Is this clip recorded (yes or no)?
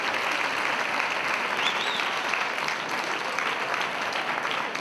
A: yes